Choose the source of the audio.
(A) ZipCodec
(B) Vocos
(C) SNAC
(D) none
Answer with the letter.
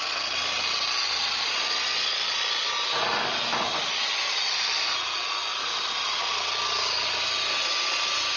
D